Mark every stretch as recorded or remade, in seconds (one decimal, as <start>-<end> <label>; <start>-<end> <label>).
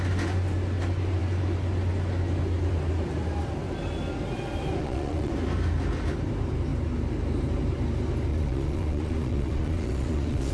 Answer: 0.0-4.8 recorded; 4.8-5.3 remade; 5.3-8.3 recorded; 8.3-10.5 remade